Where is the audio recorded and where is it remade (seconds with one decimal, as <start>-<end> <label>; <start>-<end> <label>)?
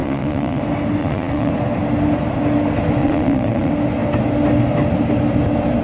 0.0-0.6 remade; 0.6-1.0 recorded; 1.0-1.5 remade; 1.5-3.0 recorded; 3.0-3.7 remade; 3.7-5.8 recorded